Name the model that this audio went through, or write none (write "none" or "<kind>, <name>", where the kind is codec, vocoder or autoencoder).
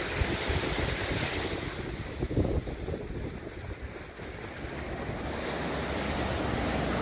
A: none